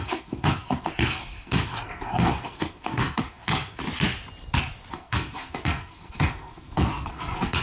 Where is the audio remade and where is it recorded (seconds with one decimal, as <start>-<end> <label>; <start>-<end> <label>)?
0.0-3.8 remade; 3.8-4.9 recorded; 4.9-7.6 remade